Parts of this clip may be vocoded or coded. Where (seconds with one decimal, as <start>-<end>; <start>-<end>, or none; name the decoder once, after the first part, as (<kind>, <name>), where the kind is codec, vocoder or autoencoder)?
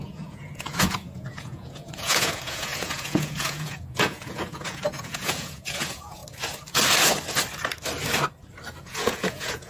0.0-6.2 (vocoder, Vocos); 8.8-9.7